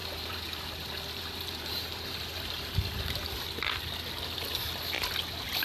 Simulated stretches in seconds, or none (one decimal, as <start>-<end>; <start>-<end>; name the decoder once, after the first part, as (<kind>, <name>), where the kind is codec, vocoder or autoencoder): 0.0-3.4 (vocoder, BigVGAN v2)